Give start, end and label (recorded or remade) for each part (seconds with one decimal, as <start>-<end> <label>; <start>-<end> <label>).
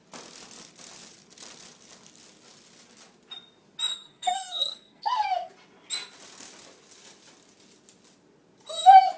0.0-3.9 recorded; 3.9-5.5 remade; 5.5-9.2 recorded